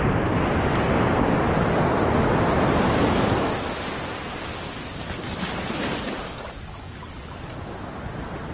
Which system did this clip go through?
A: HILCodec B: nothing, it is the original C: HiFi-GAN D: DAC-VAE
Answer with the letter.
B